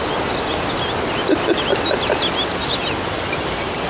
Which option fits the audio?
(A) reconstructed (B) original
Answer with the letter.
B